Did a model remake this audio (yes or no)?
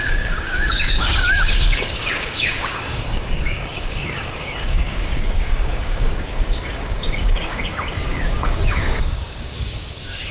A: yes